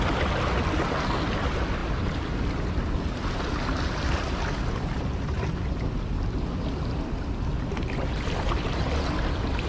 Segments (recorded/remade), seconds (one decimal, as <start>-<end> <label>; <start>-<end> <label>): 0.0-9.7 recorded